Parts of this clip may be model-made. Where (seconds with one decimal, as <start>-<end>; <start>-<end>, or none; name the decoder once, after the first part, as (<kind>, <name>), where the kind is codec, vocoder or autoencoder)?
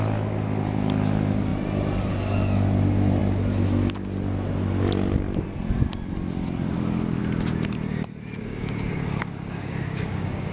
8.4-10.5 (codec, DAC)